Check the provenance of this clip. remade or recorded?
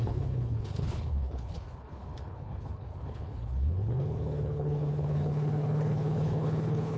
remade